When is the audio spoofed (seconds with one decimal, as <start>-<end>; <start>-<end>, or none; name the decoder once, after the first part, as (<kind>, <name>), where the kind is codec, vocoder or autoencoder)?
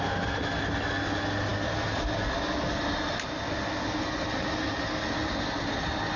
none